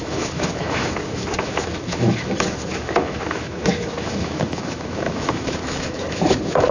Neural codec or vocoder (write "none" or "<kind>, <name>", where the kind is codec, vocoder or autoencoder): autoencoder, DAC-VAE